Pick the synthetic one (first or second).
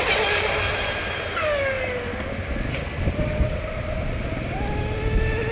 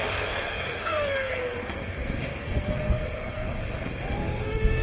second